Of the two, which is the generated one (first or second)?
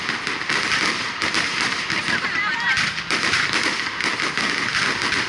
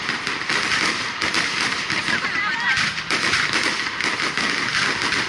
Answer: second